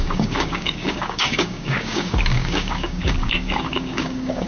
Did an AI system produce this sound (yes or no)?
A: yes